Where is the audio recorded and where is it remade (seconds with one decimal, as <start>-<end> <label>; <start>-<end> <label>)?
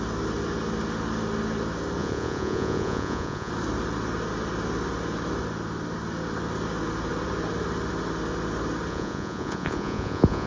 0.0-2.0 recorded; 2.0-3.5 remade; 3.5-8.9 recorded; 8.9-10.5 remade